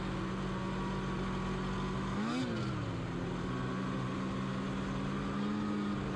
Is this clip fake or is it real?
real